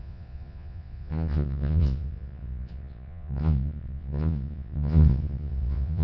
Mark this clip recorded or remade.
remade